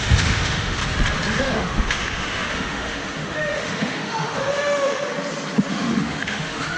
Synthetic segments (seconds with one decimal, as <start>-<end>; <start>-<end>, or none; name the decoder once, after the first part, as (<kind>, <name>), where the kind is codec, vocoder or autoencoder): 0.0-0.8 (autoencoder, DAC-VAE); 1.4-5.1; 5.7-6.8